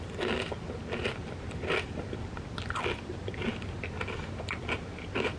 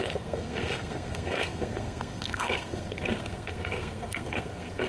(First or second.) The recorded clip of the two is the first